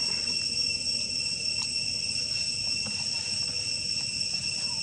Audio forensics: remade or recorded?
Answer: recorded